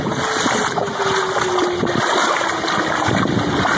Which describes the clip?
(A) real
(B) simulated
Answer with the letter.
A